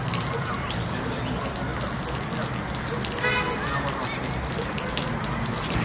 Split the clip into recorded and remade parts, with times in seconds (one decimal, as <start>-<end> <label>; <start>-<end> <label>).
0.0-5.8 recorded